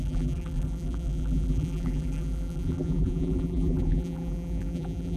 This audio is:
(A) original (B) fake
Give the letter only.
B